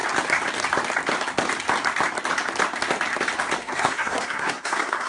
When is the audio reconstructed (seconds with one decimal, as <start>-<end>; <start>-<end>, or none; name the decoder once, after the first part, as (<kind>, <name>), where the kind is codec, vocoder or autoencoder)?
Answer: 3.6-5.1 (codec, SNAC)